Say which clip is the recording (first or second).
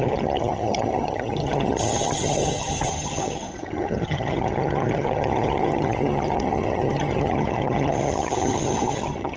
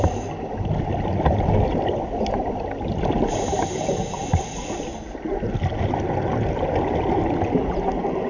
second